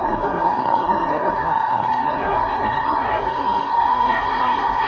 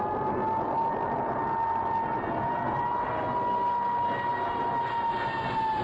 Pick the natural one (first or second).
second